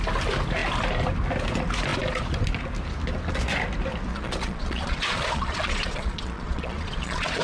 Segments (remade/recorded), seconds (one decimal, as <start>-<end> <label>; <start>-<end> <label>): 0.0-4.1 recorded; 4.1-7.4 remade